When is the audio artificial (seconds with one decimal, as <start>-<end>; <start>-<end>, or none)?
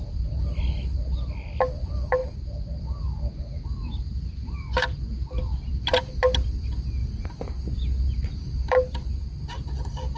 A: 2.2-2.8; 5.7-6.2; 7.0-9.1